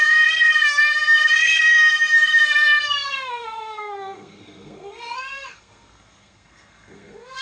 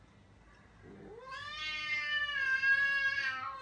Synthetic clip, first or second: first